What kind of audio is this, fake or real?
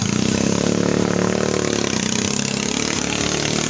real